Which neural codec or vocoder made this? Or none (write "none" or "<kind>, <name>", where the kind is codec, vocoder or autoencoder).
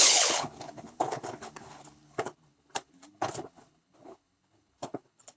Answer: codec, HILCodec